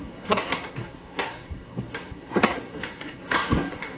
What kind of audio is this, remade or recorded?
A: remade